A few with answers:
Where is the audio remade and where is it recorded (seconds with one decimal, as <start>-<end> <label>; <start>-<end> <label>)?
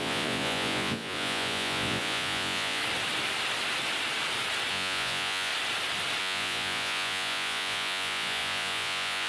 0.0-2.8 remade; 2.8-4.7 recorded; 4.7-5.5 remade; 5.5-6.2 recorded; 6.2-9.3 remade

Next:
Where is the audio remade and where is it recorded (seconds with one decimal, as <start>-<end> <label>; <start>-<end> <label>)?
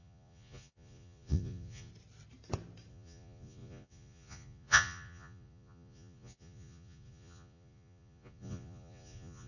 0.0-1.9 remade; 1.9-2.9 recorded; 2.9-9.5 remade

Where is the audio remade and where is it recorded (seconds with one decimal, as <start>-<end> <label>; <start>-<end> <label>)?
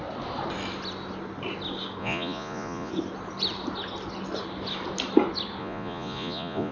0.0-2.0 recorded; 2.0-2.9 remade; 2.9-5.6 recorded; 5.6-6.7 remade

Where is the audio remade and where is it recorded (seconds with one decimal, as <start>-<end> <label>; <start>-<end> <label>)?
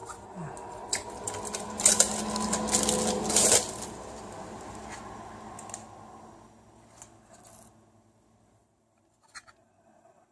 0.0-10.3 recorded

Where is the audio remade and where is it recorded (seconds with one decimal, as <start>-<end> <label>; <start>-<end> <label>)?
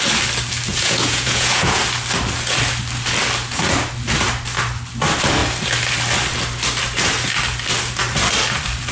0.0-0.7 recorded; 0.7-1.8 remade; 1.8-8.9 recorded